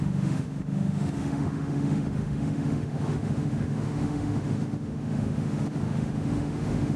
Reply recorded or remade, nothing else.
remade